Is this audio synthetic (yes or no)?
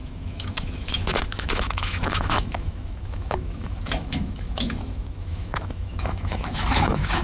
yes